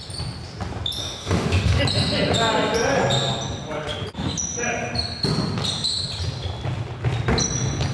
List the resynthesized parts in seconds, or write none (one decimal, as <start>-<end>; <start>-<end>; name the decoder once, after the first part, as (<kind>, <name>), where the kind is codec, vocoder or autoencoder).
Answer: 1.0-1.8 (autoencoder, DAC-VAE)